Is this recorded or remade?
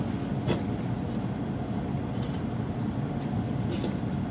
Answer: recorded